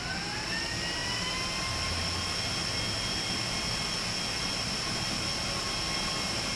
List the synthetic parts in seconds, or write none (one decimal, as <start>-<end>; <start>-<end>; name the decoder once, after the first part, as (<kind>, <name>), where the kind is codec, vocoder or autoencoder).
none